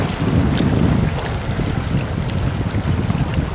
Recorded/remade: recorded